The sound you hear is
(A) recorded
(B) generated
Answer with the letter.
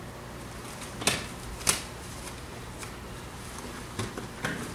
A